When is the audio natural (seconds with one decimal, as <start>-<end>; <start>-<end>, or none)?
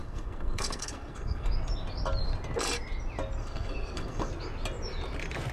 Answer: 1.5-3.4; 4.3-5.5